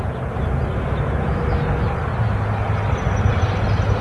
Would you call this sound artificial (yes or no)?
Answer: no